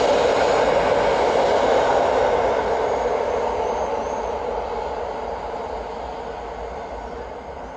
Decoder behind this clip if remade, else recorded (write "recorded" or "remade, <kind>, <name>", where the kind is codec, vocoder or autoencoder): recorded